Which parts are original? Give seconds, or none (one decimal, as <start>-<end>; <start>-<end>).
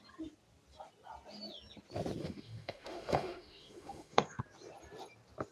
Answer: 0.0-2.2; 4.4-5.5